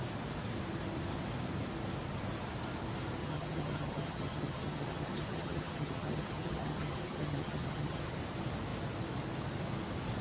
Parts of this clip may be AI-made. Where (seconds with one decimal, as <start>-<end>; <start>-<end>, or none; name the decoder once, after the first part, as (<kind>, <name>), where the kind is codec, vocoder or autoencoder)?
3.2-8.0 (vocoder, HiFi-GAN)

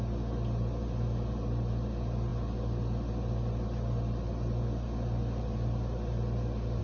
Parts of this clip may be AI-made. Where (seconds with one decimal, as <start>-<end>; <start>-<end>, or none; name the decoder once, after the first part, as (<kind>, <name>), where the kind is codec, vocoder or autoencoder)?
none

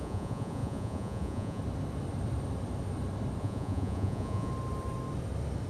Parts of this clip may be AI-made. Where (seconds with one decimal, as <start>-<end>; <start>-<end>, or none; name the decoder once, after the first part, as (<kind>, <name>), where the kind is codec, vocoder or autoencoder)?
0.0-1.6 (vocoder, Vocos); 3.4-4.5

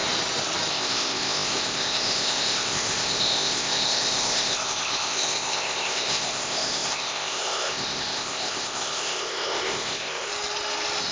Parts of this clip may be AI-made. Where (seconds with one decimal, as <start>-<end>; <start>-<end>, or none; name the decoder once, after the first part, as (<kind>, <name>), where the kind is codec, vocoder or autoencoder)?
0.7-10.3 (codec, ZipCodec)

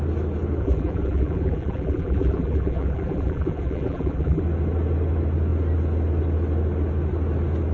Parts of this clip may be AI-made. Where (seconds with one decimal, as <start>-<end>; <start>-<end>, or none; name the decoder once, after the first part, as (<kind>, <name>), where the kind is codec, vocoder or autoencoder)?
0.6-4.4 (vocoder, BigVGAN v2)